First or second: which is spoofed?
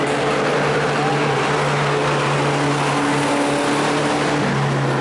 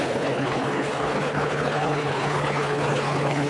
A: second